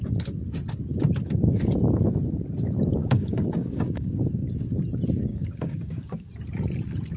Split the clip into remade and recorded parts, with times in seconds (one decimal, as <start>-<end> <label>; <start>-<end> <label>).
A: 0.0-3.0 recorded; 3.0-4.1 remade; 4.1-5.3 recorded; 5.3-6.3 remade; 6.3-7.2 recorded